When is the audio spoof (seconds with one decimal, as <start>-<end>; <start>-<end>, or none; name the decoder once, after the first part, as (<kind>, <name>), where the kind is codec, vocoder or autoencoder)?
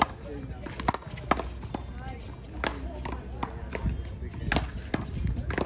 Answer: none